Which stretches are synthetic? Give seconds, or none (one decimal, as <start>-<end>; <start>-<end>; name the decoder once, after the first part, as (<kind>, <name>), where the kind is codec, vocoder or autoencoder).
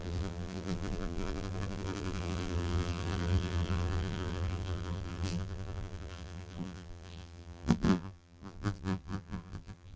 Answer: 0.0-10.0 (vocoder, BigVGAN v2)